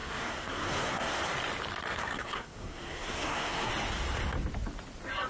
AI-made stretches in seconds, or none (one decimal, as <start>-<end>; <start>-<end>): 0.0-1.2; 1.9-3.7

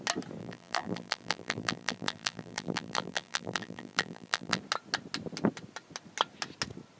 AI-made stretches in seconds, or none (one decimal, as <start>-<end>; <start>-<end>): 0.4-4.6

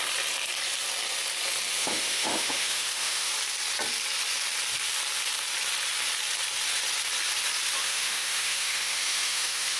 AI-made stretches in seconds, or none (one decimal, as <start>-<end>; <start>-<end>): 1.8-3.3; 7.8-9.8

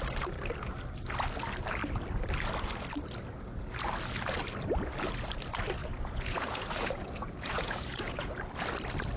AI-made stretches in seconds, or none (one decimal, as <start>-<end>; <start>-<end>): 5.8-8.3

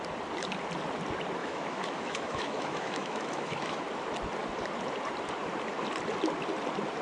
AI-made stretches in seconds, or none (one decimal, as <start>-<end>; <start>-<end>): 1.4-3.8

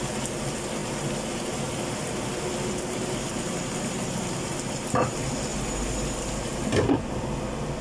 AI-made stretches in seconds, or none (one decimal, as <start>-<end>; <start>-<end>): none

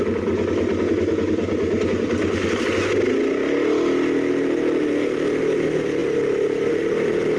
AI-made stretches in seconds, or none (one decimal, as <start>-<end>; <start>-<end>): none

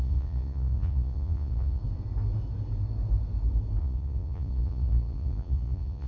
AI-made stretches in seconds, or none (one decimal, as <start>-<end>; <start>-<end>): 0.0-1.8; 3.8-6.1